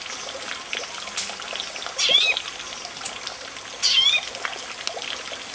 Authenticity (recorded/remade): recorded